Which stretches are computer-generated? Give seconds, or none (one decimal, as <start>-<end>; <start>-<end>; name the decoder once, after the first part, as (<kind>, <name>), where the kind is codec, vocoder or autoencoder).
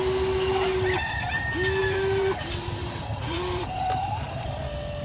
1.8-4.6 (vocoder, BigVGAN v2)